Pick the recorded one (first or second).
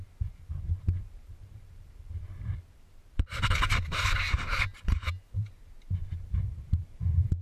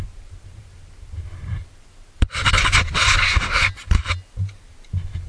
second